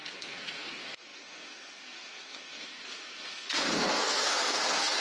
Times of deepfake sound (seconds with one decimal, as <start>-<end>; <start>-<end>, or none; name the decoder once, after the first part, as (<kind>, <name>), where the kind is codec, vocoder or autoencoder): 0.0-5.0 (codec, SNAC)